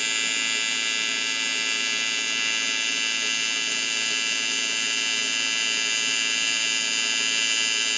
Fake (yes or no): no